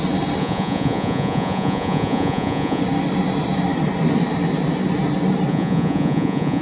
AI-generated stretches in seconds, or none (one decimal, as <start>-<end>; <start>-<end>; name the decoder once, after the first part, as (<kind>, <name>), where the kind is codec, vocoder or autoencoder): 0.4-2.8 (vocoder, Vocos); 5.5-6.6

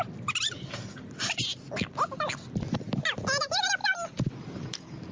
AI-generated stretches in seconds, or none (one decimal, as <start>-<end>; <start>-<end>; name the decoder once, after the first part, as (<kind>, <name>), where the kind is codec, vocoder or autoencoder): none